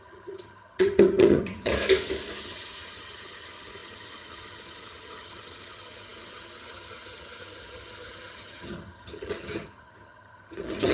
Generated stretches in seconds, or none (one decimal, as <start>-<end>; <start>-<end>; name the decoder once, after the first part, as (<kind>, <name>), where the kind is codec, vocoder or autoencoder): 0.0-1.7 (vocoder, HiFi-GAN); 2.4-10.9